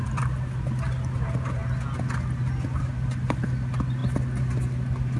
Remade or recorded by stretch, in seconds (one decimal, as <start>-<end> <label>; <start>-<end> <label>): 0.0-5.2 recorded